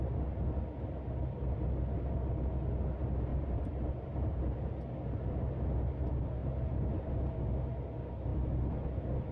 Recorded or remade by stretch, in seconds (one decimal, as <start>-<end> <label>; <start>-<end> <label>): 0.0-3.3 recorded; 3.3-4.5 remade; 4.5-6.4 recorded; 6.4-7.5 remade; 7.5-9.3 recorded